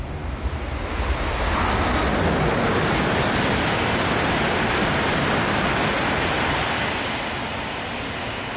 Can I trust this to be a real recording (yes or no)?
yes